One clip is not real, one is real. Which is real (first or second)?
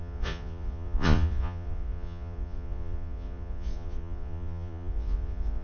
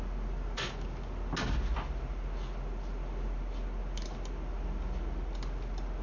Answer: second